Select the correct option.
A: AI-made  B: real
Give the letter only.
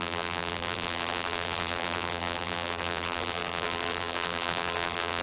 A